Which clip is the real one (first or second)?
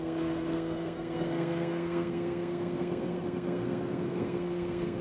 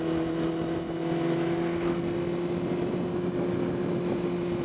second